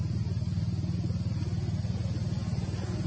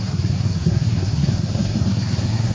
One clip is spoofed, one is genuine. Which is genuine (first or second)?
first